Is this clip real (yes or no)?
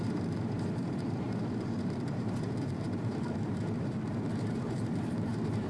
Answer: no